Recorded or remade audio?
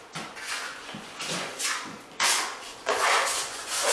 remade